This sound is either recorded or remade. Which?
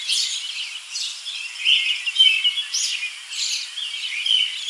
recorded